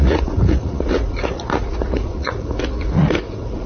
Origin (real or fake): fake